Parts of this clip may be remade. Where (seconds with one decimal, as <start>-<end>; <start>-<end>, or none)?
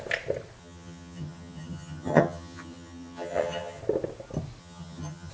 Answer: 0.6-3.8; 4.6-5.3